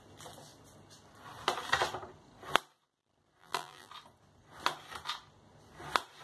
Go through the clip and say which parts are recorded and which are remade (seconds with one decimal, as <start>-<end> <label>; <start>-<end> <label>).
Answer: 0.0-3.4 recorded; 3.4-3.9 remade; 3.9-6.2 recorded